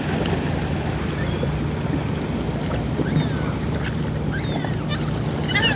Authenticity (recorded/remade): recorded